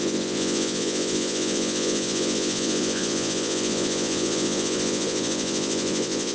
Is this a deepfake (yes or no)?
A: yes